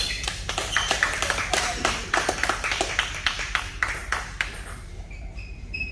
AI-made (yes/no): yes